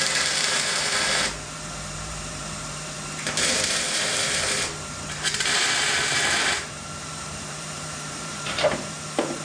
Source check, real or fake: fake